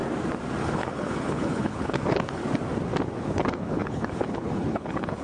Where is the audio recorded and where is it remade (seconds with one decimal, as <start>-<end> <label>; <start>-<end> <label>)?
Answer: 0.0-0.6 recorded; 0.6-2.4 remade; 2.4-3.2 recorded; 3.2-5.2 remade